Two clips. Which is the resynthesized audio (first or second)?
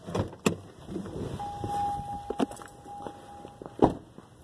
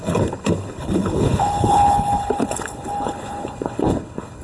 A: second